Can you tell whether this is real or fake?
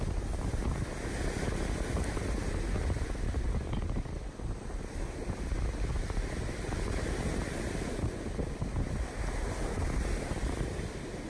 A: real